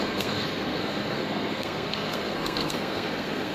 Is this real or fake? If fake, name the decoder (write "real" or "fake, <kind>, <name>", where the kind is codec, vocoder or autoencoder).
fake, codec, SNAC